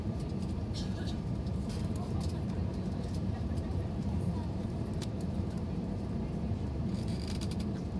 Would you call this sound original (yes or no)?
no